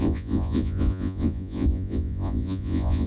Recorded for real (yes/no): no